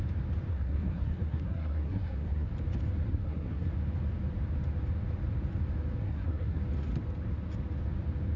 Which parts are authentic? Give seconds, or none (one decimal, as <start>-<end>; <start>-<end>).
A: 0.0-0.5; 2.5-3.1; 3.7-6.0; 6.6-8.4